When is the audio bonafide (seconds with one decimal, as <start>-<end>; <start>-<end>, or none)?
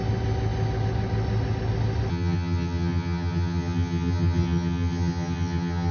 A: 0.0-2.1